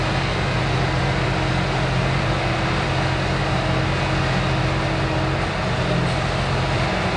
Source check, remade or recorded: recorded